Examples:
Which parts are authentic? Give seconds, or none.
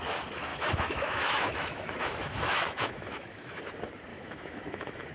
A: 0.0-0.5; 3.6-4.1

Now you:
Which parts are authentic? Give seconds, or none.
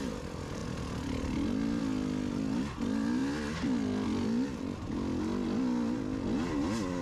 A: 0.0-7.0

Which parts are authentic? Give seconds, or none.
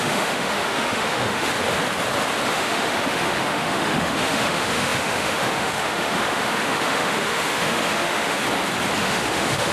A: 1.5-2.5; 8.4-9.0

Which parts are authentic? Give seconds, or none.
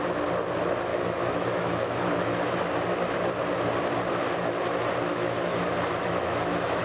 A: 0.0-0.9; 2.5-5.1; 5.6-6.0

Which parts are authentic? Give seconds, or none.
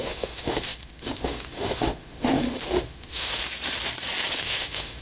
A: 3.4-4.4